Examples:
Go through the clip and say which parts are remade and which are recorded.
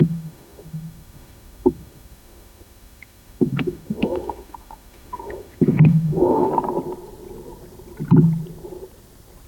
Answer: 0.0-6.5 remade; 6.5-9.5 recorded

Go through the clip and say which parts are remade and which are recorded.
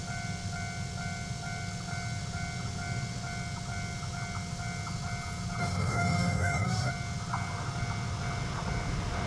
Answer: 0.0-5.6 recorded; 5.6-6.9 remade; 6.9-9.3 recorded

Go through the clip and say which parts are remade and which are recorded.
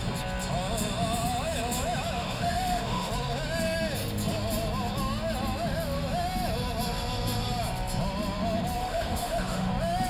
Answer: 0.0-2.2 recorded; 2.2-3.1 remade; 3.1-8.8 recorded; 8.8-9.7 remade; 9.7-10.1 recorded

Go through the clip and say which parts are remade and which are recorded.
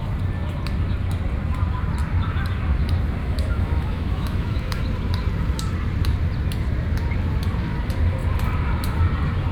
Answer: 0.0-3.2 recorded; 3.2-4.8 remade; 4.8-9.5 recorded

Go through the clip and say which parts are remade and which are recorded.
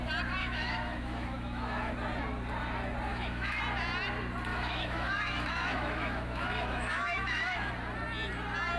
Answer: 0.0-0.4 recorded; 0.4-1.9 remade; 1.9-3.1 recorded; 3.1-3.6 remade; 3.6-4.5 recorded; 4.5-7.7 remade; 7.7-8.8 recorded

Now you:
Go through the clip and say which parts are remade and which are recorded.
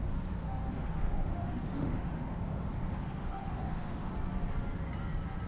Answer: 0.0-0.8 recorded; 0.8-4.1 remade; 4.1-5.5 recorded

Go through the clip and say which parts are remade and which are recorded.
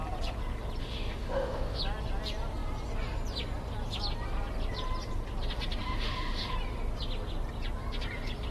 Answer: 0.0-0.8 recorded; 0.8-1.8 remade; 1.8-5.8 recorded; 5.8-6.5 remade; 6.5-8.5 recorded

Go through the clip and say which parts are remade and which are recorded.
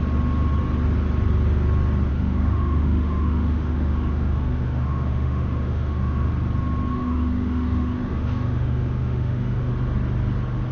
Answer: 0.0-2.1 recorded; 2.1-6.3 remade; 6.3-6.9 recorded; 6.9-9.7 remade; 9.7-10.7 recorded